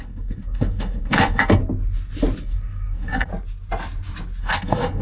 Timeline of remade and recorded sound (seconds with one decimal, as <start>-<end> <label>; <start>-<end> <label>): 0.0-1.6 remade; 1.6-2.4 recorded; 2.4-3.3 remade; 3.3-4.4 recorded; 4.4-5.0 remade